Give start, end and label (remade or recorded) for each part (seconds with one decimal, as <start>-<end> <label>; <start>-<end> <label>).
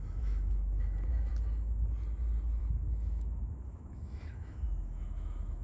0.0-1.3 remade; 1.3-2.6 recorded; 2.6-5.6 remade